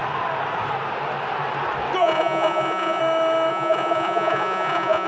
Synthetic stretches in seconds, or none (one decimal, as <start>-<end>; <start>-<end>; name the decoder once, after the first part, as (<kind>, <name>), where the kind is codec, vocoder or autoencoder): 2.0-3.0 (vocoder, Vocos); 3.5-5.1